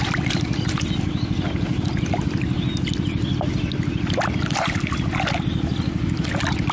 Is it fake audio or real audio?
real